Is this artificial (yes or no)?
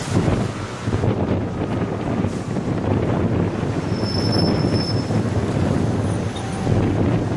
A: no